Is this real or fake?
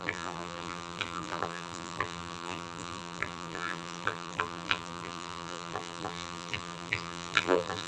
fake